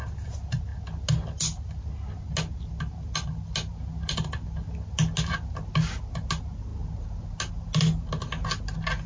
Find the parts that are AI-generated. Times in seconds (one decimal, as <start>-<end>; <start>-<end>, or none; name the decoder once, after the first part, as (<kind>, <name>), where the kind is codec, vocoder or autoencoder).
none